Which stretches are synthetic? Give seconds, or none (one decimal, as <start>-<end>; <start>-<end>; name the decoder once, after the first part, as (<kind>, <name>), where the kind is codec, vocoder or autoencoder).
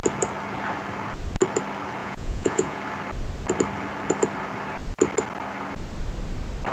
2.0-2.8 (vocoder, Vocos)